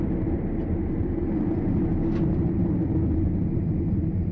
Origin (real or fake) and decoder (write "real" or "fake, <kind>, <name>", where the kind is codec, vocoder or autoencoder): real